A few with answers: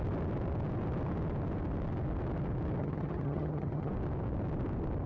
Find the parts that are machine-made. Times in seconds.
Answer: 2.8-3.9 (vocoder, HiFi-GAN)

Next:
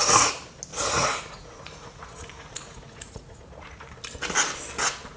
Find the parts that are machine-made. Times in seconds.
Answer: 0.7-3.8 (vocoder, Vocos)

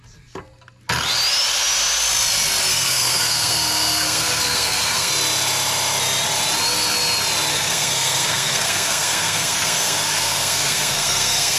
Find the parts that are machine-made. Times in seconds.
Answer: 2.7-5.1 (codec, SNAC); 7.5-11.6

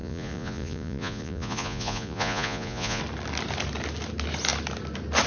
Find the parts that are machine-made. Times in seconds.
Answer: 0.0-3.0 (vocoder, Vocos)

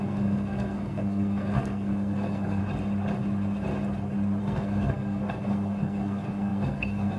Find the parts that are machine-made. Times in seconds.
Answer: 0.0-2.6 (codec, SNAC); 4.4-7.2

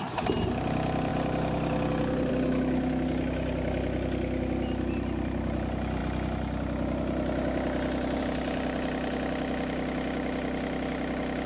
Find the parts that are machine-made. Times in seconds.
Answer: none

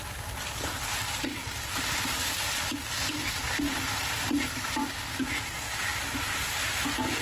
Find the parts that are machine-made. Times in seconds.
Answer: 1.4-5.1 (vocoder, BigVGAN v2); 5.9-6.6